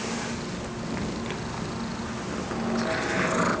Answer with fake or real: real